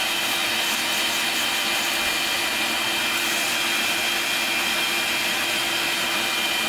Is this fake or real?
real